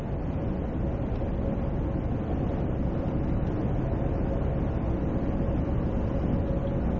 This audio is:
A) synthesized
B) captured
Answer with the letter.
B